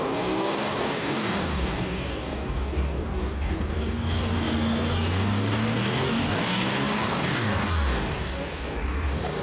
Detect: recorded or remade remade